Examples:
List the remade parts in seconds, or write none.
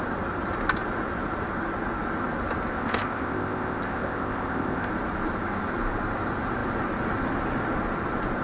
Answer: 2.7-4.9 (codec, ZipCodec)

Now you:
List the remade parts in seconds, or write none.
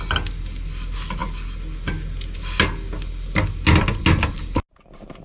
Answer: none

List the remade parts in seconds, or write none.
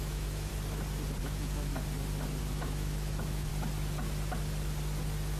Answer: 0.0-0.5 (autoencoder, DAC-VAE); 1.2-1.7; 2.4-3.5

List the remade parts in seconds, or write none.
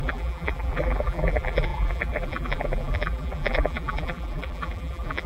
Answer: 0.0-5.3 (vocoder, BigVGAN v2)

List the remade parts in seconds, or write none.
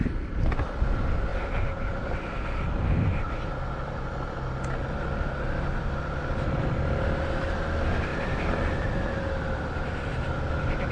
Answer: none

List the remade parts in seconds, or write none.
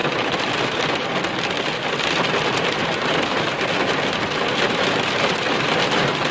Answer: none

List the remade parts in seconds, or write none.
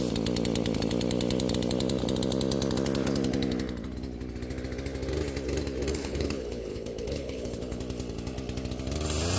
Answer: 5.9-7.8 (codec, HILCodec)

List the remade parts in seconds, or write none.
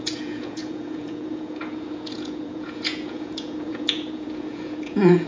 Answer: 0.0-5.3 (vocoder, Vocos)